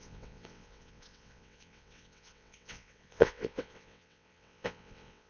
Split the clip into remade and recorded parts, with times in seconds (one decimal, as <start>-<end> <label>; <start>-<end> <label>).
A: 0.0-5.3 remade